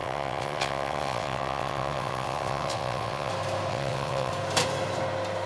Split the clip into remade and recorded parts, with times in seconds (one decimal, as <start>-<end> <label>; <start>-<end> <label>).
0.0-3.3 remade; 3.3-3.7 recorded; 3.7-4.3 remade; 4.3-5.5 recorded